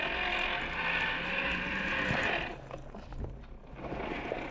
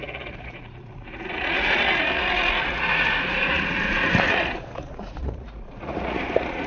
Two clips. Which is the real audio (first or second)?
first